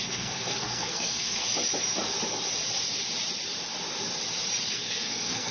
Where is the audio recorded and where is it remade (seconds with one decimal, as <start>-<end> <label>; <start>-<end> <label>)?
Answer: 0.0-1.4 remade; 1.4-4.7 recorded; 4.7-5.5 remade